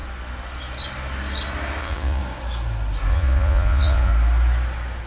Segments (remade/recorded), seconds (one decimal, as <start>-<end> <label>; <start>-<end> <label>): 0.0-1.8 recorded; 1.8-2.2 remade; 2.2-3.1 recorded; 3.1-4.1 remade; 4.1-5.1 recorded